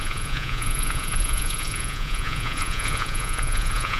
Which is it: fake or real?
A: fake